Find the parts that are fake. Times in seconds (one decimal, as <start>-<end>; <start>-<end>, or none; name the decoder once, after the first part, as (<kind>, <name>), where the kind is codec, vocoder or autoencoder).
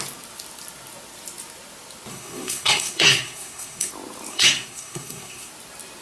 2.1-3.9 (codec, SNAC); 4.3-5.5